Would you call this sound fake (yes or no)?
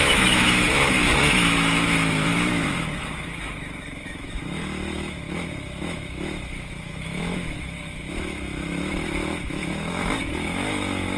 yes